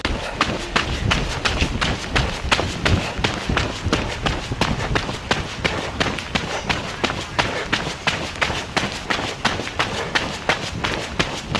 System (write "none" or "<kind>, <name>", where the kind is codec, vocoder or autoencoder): none